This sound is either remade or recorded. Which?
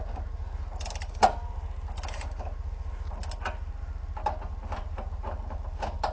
recorded